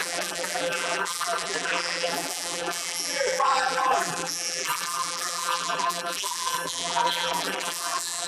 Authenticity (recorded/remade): remade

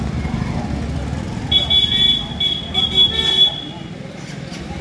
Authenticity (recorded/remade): recorded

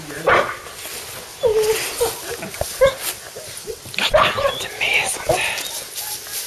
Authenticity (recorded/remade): recorded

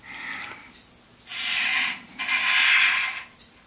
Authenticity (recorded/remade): recorded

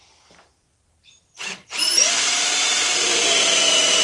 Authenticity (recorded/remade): remade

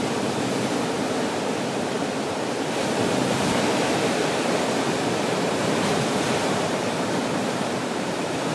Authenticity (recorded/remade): remade